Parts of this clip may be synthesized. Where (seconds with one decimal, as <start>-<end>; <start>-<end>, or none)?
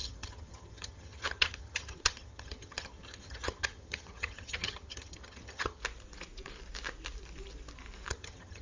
0.0-5.8; 8.1-8.6